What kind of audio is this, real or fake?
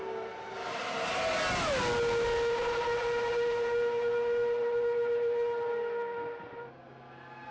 real